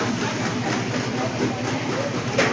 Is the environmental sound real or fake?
real